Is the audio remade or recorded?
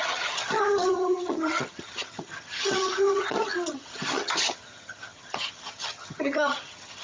remade